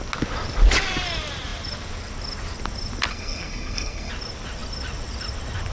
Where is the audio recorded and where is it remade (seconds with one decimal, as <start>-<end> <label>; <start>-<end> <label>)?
0.0-3.1 recorded; 3.1-4.1 remade; 4.1-5.7 recorded